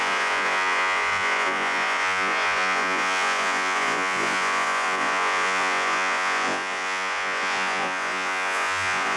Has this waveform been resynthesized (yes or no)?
yes